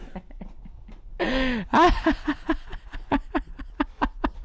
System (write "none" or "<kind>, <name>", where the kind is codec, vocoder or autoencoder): none